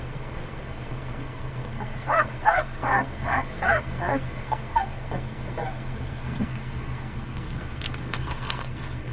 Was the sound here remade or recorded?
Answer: remade